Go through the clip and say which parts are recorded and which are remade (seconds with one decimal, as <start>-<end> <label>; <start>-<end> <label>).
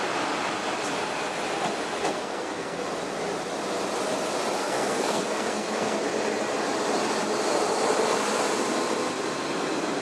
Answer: 0.0-2.0 recorded; 2.0-2.8 remade; 2.8-4.6 recorded; 4.6-6.0 remade; 6.0-10.0 recorded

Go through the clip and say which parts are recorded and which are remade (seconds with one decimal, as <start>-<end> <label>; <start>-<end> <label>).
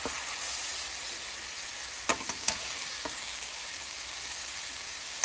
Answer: 0.0-2.1 recorded; 2.1-5.2 remade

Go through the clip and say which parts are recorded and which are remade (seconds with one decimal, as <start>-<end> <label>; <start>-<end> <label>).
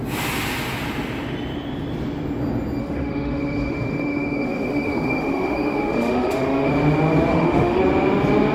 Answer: 0.0-2.8 recorded; 2.8-6.7 remade; 6.7-7.3 recorded; 7.3-7.8 remade; 7.8-8.5 recorded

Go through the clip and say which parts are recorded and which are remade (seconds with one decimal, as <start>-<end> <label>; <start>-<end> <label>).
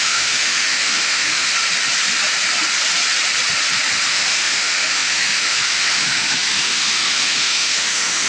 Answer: 0.0-1.5 remade; 1.5-4.1 recorded; 4.1-8.3 remade